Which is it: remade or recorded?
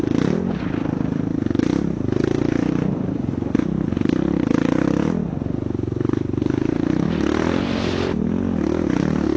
recorded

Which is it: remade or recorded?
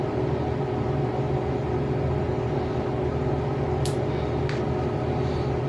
recorded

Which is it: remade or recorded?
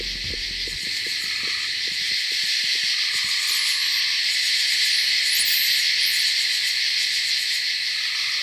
recorded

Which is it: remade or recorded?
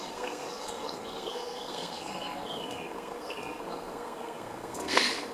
remade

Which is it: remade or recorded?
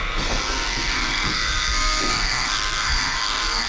remade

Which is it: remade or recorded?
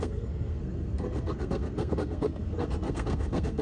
remade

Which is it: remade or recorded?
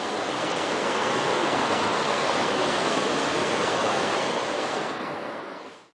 remade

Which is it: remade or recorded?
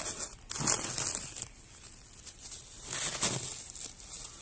recorded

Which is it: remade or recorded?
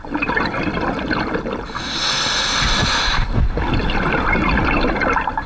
recorded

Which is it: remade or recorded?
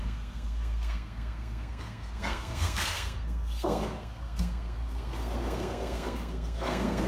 remade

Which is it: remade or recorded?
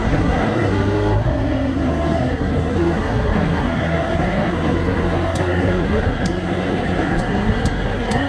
remade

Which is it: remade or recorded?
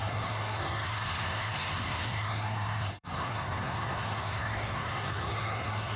remade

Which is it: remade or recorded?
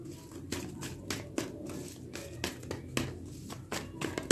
recorded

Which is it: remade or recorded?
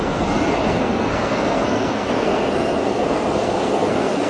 remade